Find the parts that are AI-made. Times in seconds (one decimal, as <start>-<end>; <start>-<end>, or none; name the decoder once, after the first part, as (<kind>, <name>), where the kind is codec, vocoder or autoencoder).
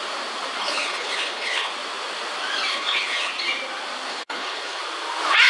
0.6-1.7 (codec, HILCodec); 2.7-3.3; 4.1-4.8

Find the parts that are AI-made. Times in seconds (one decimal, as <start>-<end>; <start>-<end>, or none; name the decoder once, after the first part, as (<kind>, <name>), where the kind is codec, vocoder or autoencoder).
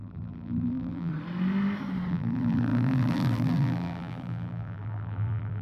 0.0-1.1 (vocoder, BigVGAN v2); 2.1-5.6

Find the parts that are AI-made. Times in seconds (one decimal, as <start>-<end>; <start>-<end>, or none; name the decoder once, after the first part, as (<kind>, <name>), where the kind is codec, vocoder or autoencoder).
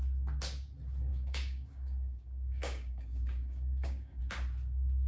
1.1-4.2 (codec, DAC)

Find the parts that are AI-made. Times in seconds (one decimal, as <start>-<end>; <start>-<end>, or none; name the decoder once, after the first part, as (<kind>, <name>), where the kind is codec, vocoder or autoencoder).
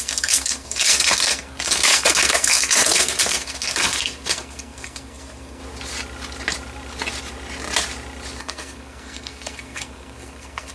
0.0-5.6 (codec, SNAC); 8.4-10.7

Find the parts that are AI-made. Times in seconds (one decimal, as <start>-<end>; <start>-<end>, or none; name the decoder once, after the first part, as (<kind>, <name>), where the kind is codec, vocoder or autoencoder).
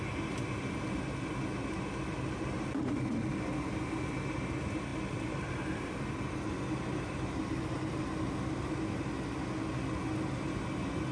4.9-8.6 (vocoder, BigVGAN v2)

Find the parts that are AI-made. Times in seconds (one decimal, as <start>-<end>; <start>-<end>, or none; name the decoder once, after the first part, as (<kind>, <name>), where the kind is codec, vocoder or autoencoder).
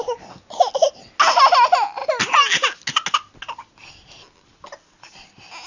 none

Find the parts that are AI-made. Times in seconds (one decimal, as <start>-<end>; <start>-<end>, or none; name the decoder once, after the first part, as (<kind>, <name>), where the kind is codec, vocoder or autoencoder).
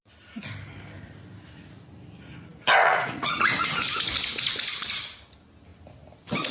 2.8-3.5 (vocoder, Vocos)